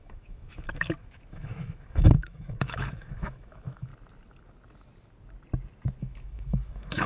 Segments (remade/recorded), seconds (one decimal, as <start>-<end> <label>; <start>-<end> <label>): 0.0-3.9 remade; 3.9-6.0 recorded; 6.0-7.1 remade